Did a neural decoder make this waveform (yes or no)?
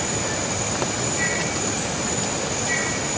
no